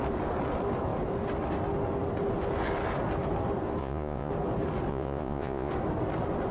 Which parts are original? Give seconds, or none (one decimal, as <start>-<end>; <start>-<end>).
0.0-3.8; 4.3-4.9; 5.7-6.5